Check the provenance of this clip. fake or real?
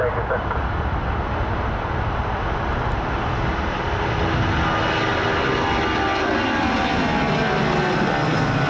real